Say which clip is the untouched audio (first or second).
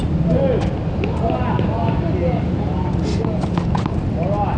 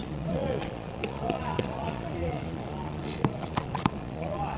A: first